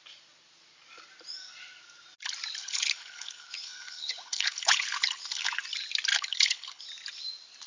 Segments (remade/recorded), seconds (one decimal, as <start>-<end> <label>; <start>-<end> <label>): 0.0-2.6 recorded; 2.6-5.6 remade; 5.6-6.1 recorded; 6.1-6.8 remade; 6.8-7.7 recorded